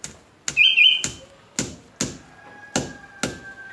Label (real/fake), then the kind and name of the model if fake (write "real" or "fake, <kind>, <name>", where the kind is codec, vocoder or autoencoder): real